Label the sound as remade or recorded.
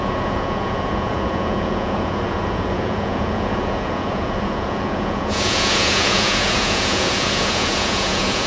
remade